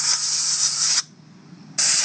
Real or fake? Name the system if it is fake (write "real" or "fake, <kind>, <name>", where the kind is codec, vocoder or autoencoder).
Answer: real